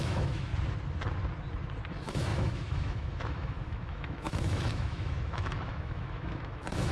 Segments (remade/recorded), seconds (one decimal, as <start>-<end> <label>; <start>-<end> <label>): 0.0-0.5 remade; 0.5-1.9 recorded; 1.9-6.9 remade